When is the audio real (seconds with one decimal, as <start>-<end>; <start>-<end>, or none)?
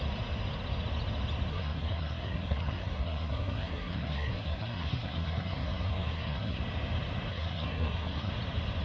0.0-1.5; 6.6-7.3; 8.3-8.8